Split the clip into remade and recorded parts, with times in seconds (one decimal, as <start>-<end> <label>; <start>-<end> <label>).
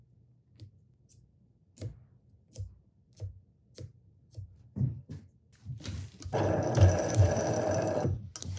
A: 0.0-3.9 recorded; 3.9-5.1 remade; 5.1-8.6 recorded